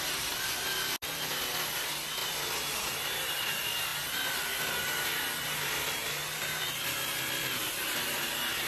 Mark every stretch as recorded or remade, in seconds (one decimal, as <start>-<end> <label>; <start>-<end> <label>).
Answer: 0.0-8.7 recorded